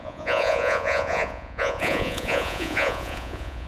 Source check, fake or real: fake